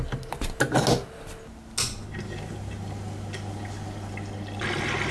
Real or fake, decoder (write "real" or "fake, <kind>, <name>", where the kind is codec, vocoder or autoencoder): real